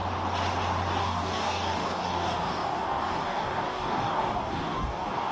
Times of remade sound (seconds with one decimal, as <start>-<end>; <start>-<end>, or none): 1.0-5.3